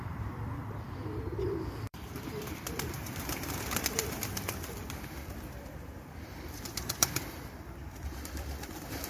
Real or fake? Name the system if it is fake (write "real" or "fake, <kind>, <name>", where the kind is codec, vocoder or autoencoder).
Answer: fake, vocoder, BigVGAN v2